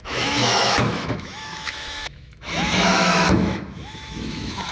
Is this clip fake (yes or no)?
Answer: yes